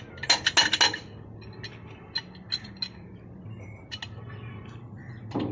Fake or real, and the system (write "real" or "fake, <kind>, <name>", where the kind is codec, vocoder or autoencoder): real